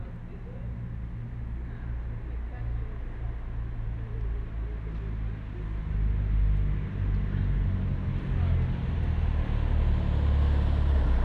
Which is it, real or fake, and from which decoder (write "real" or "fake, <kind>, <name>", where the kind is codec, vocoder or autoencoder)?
real